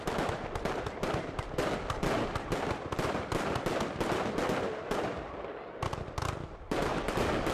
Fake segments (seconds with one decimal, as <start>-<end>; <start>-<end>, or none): 6.9-7.5